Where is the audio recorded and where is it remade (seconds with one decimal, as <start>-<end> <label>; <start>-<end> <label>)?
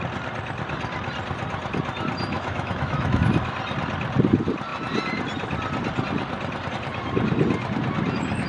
0.0-2.3 recorded; 2.3-3.2 remade; 3.2-8.5 recorded